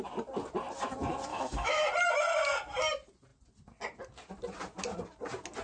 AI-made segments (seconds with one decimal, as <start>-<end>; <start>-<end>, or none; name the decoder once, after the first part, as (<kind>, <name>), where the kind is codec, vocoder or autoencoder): 1.3-1.8 (autoencoder, DAC-VAE)